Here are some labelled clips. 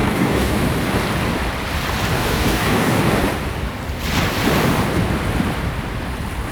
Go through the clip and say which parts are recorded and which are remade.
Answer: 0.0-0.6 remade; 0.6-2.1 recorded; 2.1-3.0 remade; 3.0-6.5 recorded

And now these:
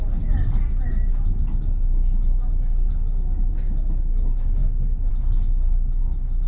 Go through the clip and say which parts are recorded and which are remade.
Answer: 0.0-6.5 recorded

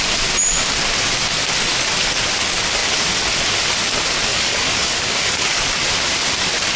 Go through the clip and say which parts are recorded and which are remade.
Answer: 0.0-4.3 recorded; 4.3-5.6 remade; 5.6-6.8 recorded

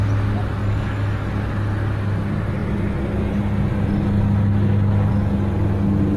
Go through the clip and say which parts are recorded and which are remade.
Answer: 0.0-0.6 recorded; 0.6-1.3 remade; 1.3-6.2 recorded